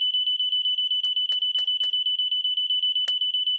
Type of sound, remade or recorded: recorded